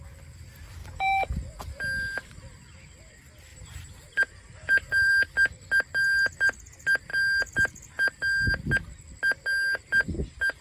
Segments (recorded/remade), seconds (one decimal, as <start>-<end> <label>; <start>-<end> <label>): 0.0-0.8 recorded; 0.8-1.3 remade; 1.3-3.5 recorded; 3.5-5.1 remade; 5.1-10.6 recorded